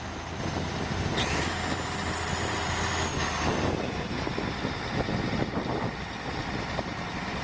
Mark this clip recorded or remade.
recorded